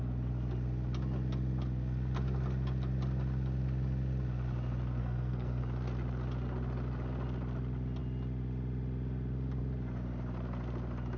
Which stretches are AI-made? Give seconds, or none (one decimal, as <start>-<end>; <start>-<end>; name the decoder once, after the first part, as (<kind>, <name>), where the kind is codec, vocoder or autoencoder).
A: 5.0-5.6 (codec, SNAC)